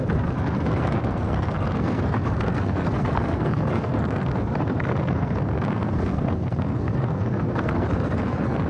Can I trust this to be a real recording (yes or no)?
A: no